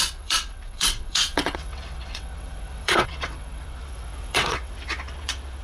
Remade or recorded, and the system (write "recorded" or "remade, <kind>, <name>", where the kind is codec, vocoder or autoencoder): remade, vocoder, WaveNeXt